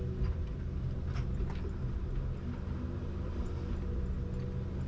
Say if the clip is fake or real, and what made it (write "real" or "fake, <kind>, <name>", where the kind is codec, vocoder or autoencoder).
real